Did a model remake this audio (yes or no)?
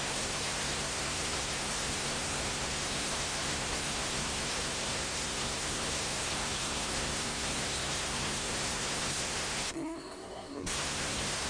yes